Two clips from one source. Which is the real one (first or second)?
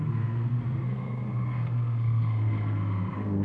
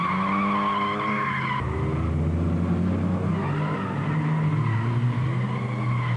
second